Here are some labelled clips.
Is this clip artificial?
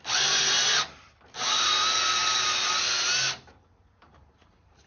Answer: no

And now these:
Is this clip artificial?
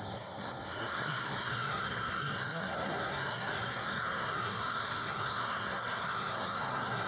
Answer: yes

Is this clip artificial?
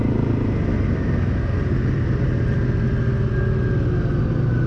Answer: no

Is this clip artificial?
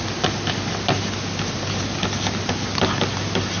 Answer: no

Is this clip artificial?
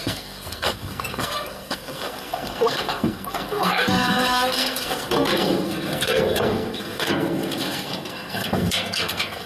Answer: yes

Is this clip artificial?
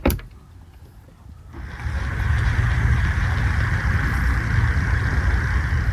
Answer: no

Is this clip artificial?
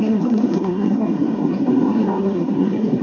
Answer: yes